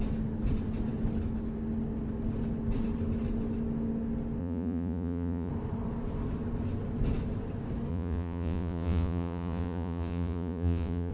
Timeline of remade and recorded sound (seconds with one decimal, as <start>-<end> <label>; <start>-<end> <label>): 0.0-4.4 recorded; 4.4-5.5 remade; 5.5-7.9 recorded; 7.9-11.1 remade